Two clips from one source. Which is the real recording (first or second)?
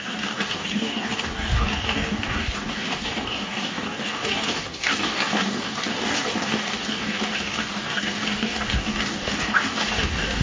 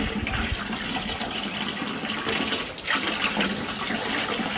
second